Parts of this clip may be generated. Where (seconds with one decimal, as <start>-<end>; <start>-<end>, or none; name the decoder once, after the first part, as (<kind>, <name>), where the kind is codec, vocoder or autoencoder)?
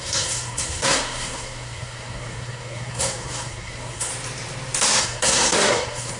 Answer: 0.0-4.1 (codec, SNAC); 5.0-6.2